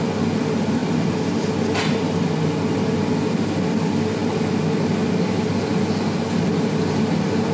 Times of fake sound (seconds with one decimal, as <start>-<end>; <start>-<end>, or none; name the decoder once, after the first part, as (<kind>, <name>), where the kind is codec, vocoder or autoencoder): none